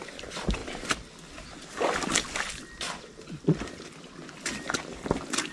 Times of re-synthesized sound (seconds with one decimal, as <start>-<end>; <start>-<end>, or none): none